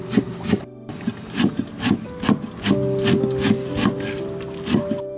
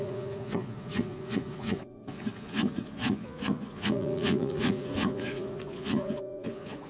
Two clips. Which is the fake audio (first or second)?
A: second